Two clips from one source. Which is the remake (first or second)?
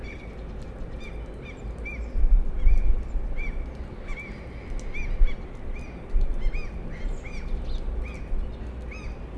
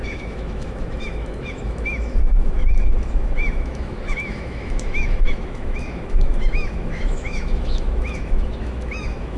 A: second